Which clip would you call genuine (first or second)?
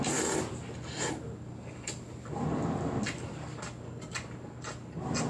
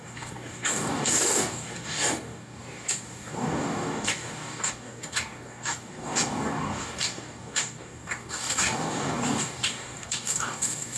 first